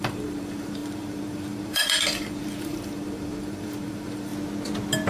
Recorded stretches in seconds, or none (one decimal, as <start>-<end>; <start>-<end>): 4.3-5.1